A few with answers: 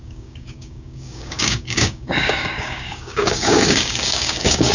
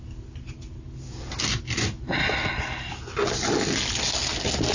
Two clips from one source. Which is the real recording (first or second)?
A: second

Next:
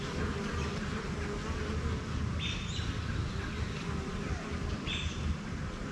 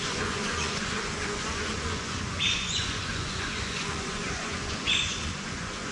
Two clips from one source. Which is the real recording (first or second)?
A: first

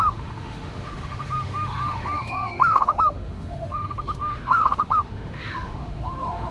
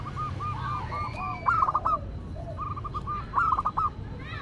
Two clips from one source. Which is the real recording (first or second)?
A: second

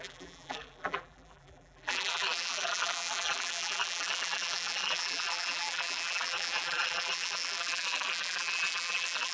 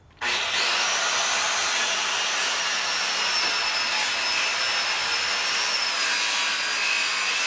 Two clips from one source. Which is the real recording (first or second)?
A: second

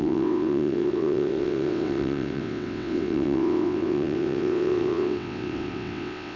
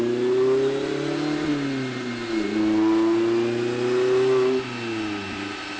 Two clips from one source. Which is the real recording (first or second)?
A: second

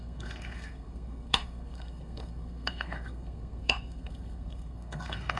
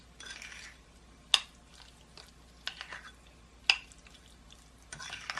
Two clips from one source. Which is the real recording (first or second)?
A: second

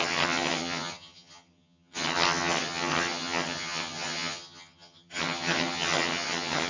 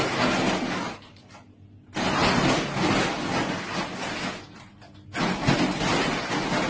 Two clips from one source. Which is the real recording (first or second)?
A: second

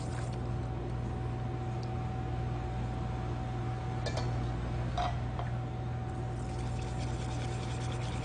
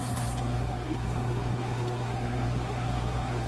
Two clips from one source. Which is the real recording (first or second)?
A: first